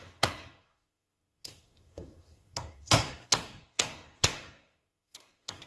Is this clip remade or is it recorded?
remade